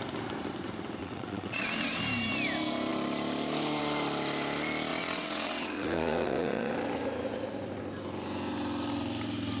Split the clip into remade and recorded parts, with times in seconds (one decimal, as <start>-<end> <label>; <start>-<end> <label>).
0.0-1.0 recorded; 1.0-2.0 remade; 2.0-4.9 recorded; 4.9-6.7 remade; 6.7-9.6 recorded